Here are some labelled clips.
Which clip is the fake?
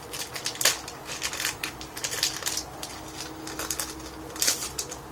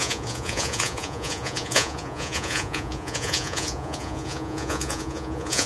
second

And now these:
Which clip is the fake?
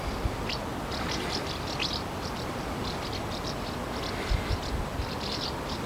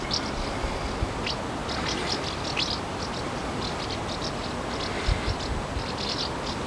first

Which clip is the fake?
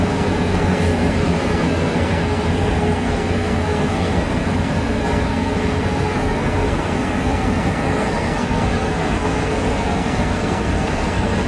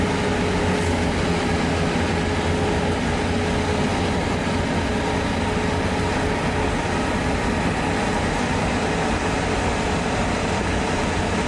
first